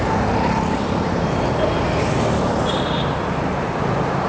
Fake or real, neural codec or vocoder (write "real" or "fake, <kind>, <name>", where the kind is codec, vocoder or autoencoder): real